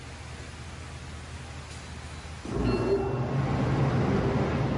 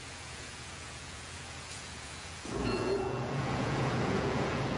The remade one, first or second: second